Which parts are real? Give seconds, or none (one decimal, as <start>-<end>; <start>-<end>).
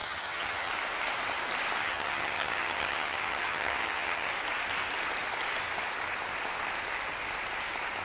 0.7-1.8; 4.3-8.0